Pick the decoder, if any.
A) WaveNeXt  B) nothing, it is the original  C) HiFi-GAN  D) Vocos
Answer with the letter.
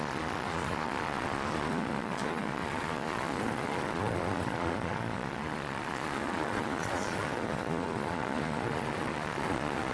D